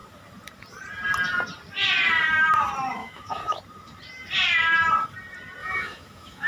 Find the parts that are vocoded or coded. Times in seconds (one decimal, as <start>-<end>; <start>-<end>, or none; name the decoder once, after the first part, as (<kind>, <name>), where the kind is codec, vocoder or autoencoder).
3.0-3.6 (autoencoder, DAC-VAE); 5.6-6.5